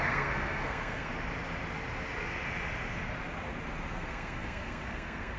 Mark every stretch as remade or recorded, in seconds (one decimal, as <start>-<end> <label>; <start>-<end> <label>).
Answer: 0.0-1.1 remade; 1.1-3.9 recorded; 3.9-5.4 remade